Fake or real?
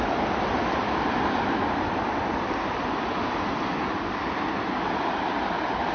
fake